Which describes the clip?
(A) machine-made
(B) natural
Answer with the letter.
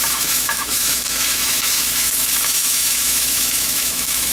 A